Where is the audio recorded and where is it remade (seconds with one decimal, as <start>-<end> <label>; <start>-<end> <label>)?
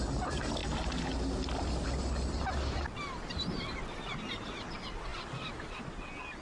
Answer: 0.0-6.4 recorded